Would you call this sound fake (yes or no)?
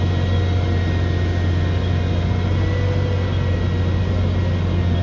no